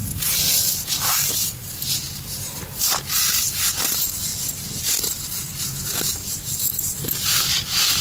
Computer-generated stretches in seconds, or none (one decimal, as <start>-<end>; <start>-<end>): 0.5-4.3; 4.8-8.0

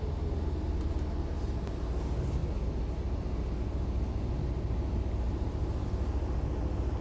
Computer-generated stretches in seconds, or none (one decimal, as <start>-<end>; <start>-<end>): none

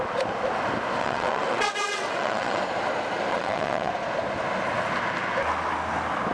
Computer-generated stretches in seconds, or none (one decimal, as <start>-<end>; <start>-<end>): 1.0-2.6; 3.3-3.9

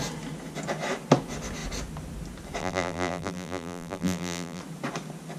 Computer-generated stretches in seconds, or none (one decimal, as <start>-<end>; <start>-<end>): 2.6-4.6

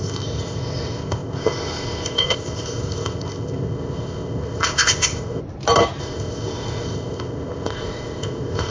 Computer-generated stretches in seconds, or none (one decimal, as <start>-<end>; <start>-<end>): 0.0-5.4; 6.0-8.7

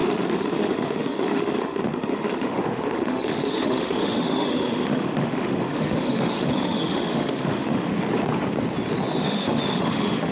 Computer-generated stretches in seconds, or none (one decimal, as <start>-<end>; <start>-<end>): 0.0-7.9; 9.2-10.3

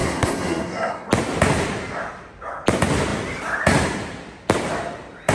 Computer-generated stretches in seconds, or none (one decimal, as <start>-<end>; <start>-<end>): 0.0-1.1